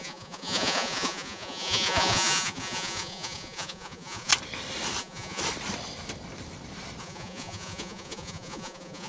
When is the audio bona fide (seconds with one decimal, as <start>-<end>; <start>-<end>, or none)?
4.3-5.0; 5.4-7.0